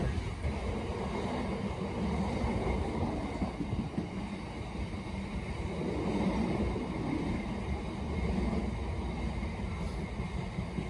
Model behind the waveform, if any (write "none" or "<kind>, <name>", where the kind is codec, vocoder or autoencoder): none